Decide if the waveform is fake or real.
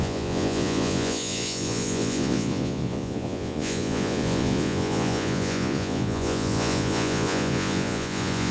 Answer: fake